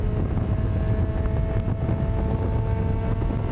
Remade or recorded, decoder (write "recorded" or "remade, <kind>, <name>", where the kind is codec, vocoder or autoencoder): recorded